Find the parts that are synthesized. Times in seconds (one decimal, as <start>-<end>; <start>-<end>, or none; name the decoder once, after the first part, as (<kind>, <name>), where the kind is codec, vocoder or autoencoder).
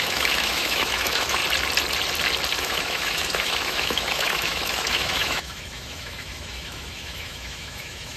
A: 0.0-1.4 (autoencoder, DAC-VAE); 2.6-8.2